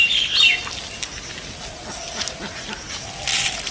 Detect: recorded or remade recorded